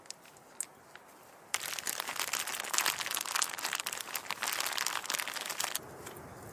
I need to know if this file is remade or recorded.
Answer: recorded